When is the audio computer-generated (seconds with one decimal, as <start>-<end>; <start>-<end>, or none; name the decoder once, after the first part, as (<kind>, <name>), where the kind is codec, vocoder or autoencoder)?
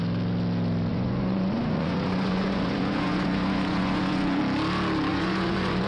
0.9-4.4 (vocoder, Vocos); 5.1-5.9